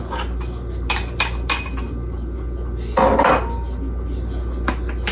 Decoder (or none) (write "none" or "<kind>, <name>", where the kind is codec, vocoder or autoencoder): none